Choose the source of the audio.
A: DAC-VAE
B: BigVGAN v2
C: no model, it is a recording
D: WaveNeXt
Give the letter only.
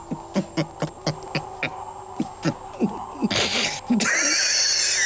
C